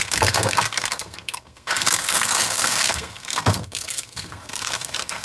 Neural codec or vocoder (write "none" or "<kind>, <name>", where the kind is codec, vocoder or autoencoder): codec, SNAC